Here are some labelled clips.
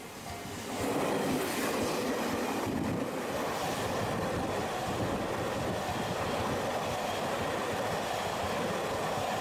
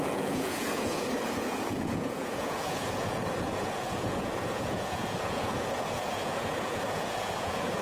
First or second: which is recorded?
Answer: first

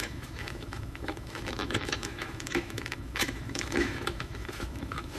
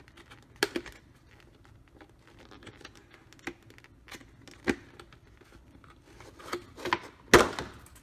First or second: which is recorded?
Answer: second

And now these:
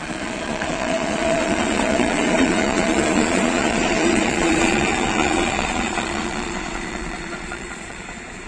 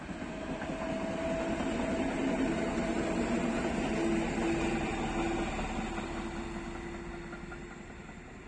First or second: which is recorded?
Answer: second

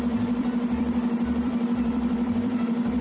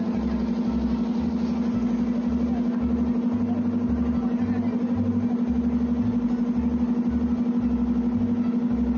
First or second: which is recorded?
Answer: second